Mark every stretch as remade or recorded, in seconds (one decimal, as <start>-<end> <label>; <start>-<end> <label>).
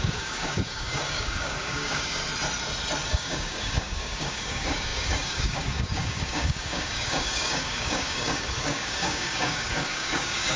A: 0.0-2.2 remade; 2.2-3.1 recorded; 3.1-10.6 remade